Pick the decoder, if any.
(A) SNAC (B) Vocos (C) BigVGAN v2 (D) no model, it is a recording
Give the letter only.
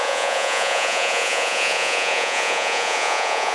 B